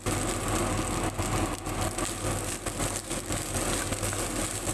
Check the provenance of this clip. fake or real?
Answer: real